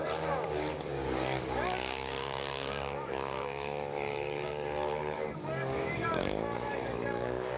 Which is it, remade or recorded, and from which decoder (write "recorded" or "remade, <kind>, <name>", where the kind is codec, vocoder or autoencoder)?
remade, codec, DAC